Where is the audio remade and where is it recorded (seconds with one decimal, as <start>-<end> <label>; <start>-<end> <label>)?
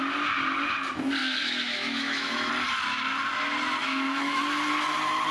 0.0-1.2 recorded; 1.2-2.5 remade; 2.5-3.8 recorded; 3.8-4.4 remade; 4.4-5.3 recorded